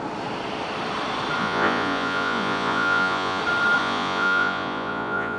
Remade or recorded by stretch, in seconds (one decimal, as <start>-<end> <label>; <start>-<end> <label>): 0.0-1.4 recorded; 1.4-3.4 remade; 3.4-3.8 recorded; 3.8-5.4 remade